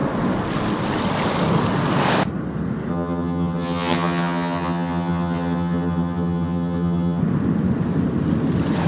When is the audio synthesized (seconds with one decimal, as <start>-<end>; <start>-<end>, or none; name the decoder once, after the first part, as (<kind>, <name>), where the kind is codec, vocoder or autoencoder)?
2.9-7.2 (vocoder, HiFi-GAN)